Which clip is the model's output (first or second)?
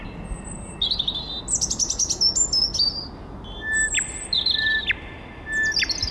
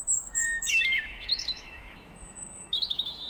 second